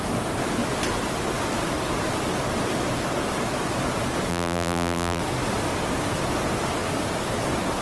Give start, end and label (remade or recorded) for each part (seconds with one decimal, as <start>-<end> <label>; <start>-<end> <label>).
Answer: 0.0-4.3 recorded; 4.3-5.2 remade; 5.2-7.8 recorded